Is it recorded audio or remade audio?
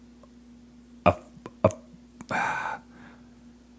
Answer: recorded